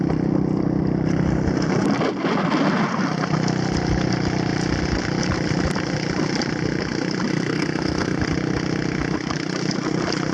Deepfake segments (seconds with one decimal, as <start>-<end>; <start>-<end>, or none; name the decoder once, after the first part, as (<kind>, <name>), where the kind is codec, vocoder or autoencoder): 7.3-8.2 (codec, SNAC)

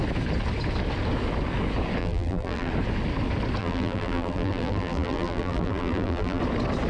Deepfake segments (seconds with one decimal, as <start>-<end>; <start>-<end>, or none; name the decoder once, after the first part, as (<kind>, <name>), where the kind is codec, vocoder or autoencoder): 2.0-2.7 (vocoder, BigVGAN v2); 3.6-6.4

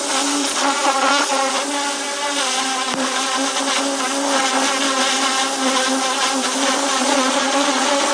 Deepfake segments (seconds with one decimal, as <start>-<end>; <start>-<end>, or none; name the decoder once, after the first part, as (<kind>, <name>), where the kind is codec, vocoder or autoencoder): 0.4-1.5 (vocoder, Vocos); 7.0-8.1

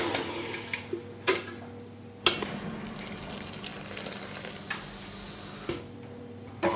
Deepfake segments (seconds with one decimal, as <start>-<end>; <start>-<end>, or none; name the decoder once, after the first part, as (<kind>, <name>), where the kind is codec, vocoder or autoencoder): none

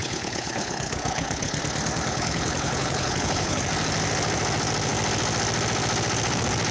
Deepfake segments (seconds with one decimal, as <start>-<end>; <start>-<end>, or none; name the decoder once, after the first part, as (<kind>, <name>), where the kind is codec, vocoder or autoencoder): 0.0-1.6 (codec, HILCodec); 2.1-3.6